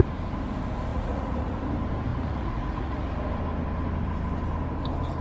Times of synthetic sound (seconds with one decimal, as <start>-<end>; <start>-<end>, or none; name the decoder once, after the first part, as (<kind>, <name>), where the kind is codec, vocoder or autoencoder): 0.9-1.6 (vocoder, Vocos); 2.1-3.0